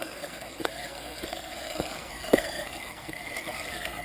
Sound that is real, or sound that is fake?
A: fake